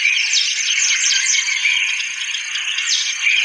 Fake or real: real